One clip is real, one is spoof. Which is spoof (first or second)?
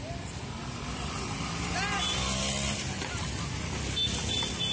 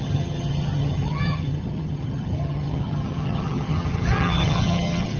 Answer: second